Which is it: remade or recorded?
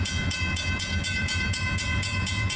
remade